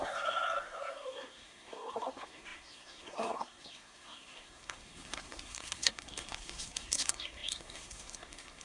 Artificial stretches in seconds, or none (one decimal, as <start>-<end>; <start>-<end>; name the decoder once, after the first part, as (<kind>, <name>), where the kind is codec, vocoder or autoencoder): 0.0-8.6 (codec, SNAC)